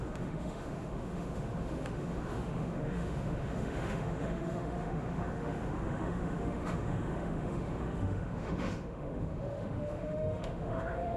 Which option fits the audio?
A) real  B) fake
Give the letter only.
B